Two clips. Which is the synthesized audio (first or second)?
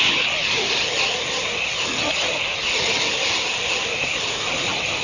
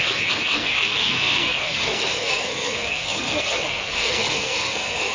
second